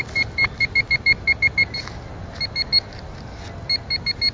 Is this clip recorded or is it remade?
recorded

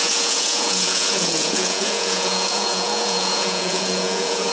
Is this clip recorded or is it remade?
remade